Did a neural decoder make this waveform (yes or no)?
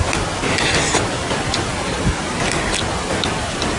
no